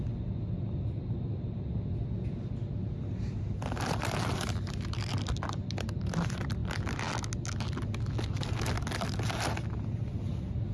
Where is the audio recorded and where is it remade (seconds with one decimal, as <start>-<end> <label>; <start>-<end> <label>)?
0.0-10.7 recorded